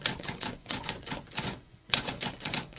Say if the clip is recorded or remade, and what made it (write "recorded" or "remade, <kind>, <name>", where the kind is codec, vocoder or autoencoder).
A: remade, vocoder, Vocos